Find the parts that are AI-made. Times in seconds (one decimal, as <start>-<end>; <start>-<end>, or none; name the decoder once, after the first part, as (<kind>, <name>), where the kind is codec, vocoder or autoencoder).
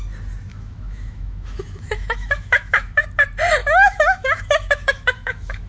0.5-3.0 (autoencoder, DAC-VAE); 3.6-5.7